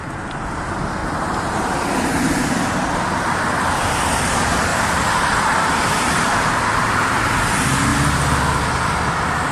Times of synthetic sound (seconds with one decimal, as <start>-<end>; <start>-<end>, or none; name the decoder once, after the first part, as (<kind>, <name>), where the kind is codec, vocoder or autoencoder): 0.0-1.0 (vocoder, BigVGAN v2); 1.6-7.9; 8.6-9.5

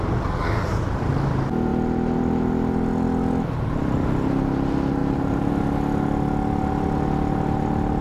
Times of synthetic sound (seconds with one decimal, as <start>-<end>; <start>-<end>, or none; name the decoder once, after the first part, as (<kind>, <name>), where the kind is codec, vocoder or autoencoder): 0.4-1.1 (vocoder, BigVGAN v2); 5.0-5.5

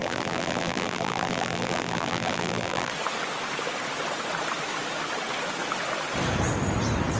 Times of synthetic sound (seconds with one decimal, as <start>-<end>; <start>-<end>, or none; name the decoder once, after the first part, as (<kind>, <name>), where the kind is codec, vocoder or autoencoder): 0.0-2.9 (vocoder, BigVGAN v2)